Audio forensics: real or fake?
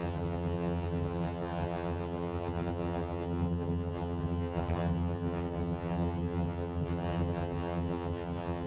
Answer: fake